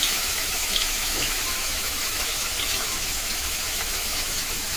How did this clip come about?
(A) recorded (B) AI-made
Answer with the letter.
B